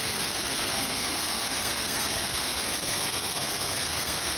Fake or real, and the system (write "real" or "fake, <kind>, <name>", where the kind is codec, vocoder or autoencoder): fake, codec, SNAC